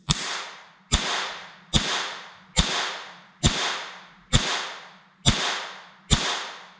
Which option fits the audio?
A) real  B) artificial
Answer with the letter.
A